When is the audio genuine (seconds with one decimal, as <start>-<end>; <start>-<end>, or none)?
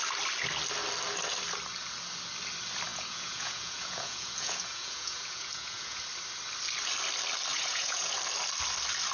0.0-2.9; 6.0-7.5; 8.1-9.1